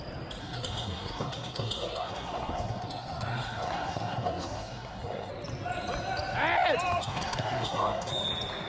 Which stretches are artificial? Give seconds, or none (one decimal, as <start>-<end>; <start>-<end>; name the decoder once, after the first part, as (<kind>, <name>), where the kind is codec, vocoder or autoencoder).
0.4-5.3 (codec, SNAC); 7.0-8.1

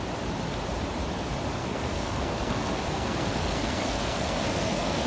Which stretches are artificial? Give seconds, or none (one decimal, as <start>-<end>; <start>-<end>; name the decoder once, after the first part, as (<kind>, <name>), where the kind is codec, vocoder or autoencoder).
1.6-5.1 (codec, SNAC)

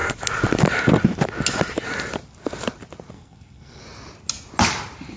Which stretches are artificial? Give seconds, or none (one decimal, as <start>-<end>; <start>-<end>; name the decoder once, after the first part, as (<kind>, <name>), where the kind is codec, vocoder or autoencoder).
3.1-3.8 (codec, SNAC)

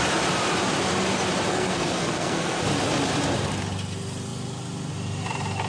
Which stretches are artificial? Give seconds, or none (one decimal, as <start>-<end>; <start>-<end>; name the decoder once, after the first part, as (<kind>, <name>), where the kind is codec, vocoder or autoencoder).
1.5-2.6 (codec, SNAC)

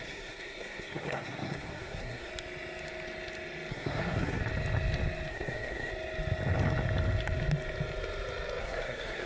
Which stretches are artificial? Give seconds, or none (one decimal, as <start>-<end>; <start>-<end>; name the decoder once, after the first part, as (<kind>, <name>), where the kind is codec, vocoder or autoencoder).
0.0-2.3 (codec, SNAC); 3.7-4.4; 5.3-5.9; 8.6-9.3